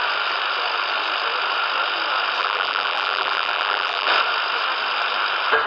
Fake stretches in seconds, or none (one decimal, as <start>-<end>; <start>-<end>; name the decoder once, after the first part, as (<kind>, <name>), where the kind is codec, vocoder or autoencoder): 2.4-4.1 (vocoder, BigVGAN v2)